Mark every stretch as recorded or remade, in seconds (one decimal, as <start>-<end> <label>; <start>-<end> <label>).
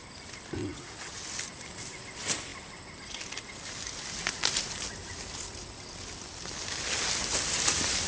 0.0-0.6 recorded; 0.6-1.2 remade; 1.2-8.1 recorded